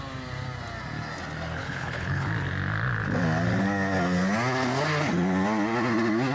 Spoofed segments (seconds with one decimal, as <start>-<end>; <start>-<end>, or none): 1.6-2.3